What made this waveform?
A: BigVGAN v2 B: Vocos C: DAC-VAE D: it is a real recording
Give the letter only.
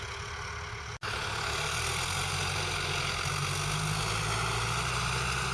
D